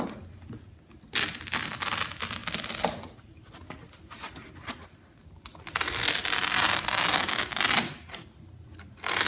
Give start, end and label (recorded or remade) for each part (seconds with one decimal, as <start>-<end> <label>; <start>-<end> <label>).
0.0-9.3 recorded